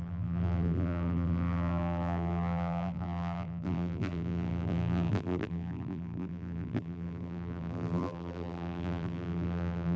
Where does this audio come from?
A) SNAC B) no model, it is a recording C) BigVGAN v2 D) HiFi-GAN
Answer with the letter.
C